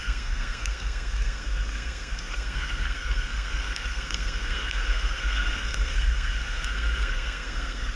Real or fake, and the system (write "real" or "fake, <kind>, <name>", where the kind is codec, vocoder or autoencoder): fake, codec, SNAC